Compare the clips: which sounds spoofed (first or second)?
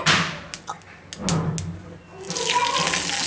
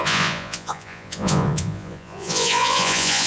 second